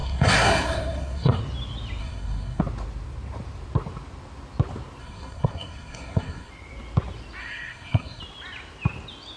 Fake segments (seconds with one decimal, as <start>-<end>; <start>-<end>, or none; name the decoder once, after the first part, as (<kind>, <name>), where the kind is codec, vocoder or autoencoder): 0.0-1.4 (codec, SNAC); 2.0-2.6; 5.0-6.5; 7.4-8.2

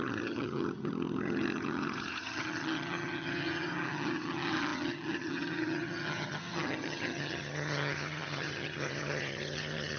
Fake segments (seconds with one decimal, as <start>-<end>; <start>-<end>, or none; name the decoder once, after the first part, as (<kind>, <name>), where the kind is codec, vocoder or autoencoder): 0.0-10.0 (vocoder, HiFi-GAN)

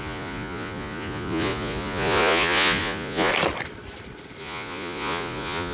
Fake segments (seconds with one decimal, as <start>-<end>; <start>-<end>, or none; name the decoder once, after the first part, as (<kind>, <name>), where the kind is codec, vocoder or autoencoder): 0.0-3.3 (vocoder, Vocos); 4.4-5.7

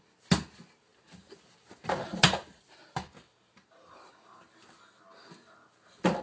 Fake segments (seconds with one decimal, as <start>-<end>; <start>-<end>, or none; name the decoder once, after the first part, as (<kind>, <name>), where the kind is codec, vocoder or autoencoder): none

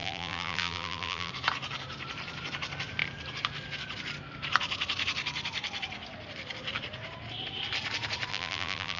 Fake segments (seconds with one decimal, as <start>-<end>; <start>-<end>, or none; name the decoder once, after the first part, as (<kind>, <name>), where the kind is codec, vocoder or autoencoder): 0.0-1.3 (vocoder, BigVGAN v2); 8.3-9.0

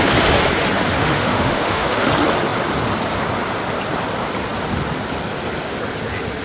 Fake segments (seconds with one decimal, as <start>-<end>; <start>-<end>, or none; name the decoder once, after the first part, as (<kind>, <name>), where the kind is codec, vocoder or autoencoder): 1.0-2.1 (autoencoder, DAC-VAE)